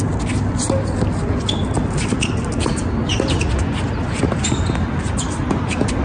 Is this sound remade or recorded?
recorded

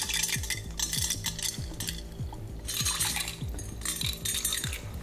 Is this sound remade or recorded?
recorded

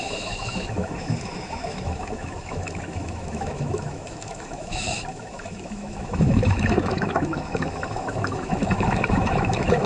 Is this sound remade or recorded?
remade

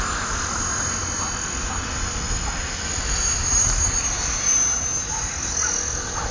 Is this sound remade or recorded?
recorded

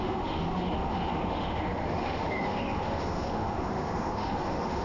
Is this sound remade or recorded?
remade